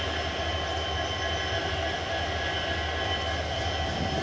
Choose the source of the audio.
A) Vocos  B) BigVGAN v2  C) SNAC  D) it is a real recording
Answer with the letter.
D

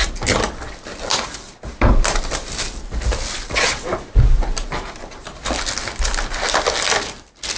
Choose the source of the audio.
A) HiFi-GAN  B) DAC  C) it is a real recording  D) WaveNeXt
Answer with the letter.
C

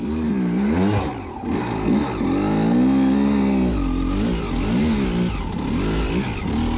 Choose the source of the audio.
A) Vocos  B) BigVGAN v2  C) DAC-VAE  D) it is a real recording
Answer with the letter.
D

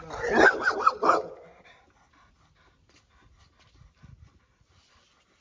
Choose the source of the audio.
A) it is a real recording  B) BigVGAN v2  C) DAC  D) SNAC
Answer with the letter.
A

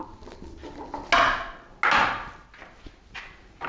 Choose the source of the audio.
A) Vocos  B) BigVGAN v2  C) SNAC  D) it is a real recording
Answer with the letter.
D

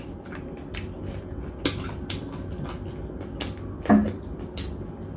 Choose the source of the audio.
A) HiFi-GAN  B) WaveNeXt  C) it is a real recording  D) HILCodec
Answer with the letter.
C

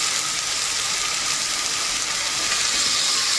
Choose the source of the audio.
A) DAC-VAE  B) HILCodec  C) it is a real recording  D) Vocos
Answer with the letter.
C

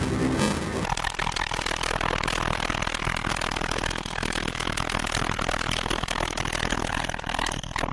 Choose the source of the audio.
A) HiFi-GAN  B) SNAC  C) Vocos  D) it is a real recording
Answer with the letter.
D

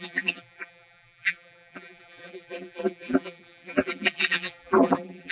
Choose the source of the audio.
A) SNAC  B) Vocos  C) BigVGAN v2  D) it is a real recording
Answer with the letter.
C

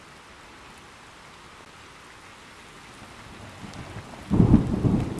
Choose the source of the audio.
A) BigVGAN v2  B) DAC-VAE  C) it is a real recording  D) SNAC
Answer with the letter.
C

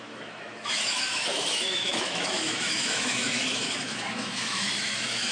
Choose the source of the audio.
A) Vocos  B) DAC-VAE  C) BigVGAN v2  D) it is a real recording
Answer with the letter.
B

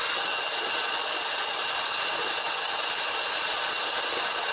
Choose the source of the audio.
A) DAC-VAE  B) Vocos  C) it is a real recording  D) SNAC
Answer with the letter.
C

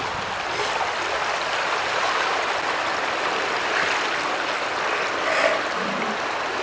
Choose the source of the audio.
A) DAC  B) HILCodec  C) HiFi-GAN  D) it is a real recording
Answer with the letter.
D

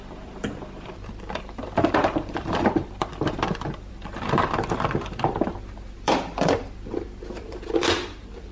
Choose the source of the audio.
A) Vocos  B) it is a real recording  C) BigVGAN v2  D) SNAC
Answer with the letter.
C